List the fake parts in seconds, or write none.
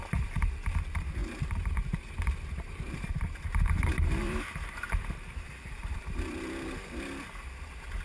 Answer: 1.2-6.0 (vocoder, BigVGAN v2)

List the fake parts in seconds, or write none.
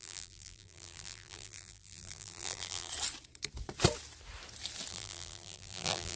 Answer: 0.0-2.9 (vocoder, BigVGAN v2); 4.9-6.2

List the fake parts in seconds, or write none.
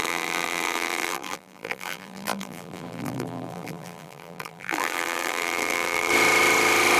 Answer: 0.0-6.1 (vocoder, BigVGAN v2)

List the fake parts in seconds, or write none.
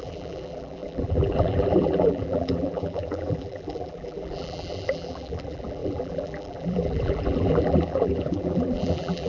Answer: 0.0-9.3 (vocoder, BigVGAN v2)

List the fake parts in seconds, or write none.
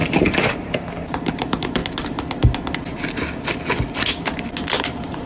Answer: 0.0-1.8 (vocoder, BigVGAN v2); 4.8-5.3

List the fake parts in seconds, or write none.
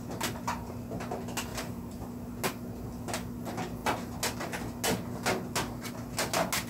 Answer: 1.5-2.2 (vocoder, BigVGAN v2)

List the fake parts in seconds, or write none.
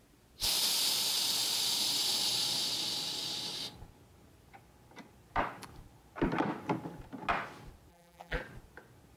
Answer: 7.9-8.4 (vocoder, BigVGAN v2)